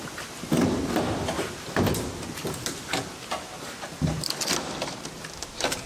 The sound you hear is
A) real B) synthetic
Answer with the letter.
A